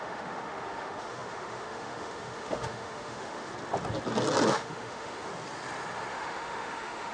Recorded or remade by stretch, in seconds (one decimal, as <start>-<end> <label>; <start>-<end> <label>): 0.0-3.5 remade; 3.5-4.5 recorded; 4.5-5.3 remade; 5.3-6.1 recorded; 6.1-7.1 remade